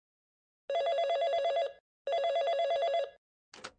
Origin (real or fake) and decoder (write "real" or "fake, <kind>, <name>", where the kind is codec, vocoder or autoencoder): real